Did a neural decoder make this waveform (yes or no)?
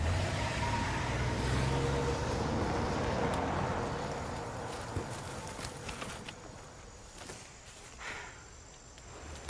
no